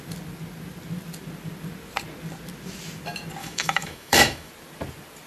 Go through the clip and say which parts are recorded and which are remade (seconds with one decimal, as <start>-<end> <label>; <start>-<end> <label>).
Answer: 0.0-3.4 recorded; 3.4-4.5 remade; 4.5-5.3 recorded